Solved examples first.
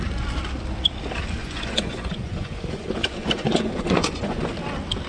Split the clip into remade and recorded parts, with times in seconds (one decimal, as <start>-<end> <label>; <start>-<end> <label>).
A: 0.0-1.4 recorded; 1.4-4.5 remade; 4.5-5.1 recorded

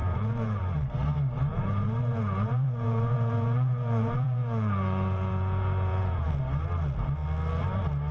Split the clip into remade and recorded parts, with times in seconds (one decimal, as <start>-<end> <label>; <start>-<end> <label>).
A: 0.0-0.7 remade; 0.7-1.5 recorded; 1.5-6.3 remade; 6.3-8.1 recorded

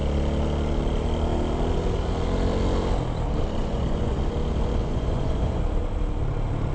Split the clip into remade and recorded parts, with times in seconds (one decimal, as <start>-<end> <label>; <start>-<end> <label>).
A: 0.0-3.6 recorded; 3.6-4.2 remade; 4.2-4.8 recorded; 4.8-5.6 remade; 5.6-6.7 recorded

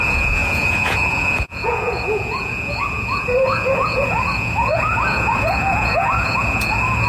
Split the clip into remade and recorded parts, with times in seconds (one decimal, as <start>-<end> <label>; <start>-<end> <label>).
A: 0.0-7.1 remade